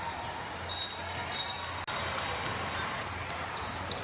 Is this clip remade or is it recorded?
recorded